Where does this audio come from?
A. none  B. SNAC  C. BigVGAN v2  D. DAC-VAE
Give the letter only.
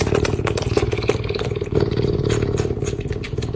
A